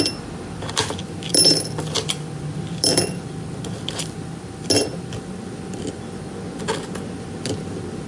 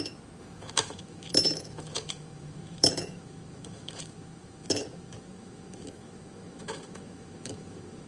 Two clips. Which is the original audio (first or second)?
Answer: first